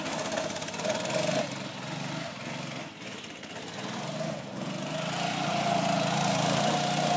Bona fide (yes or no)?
yes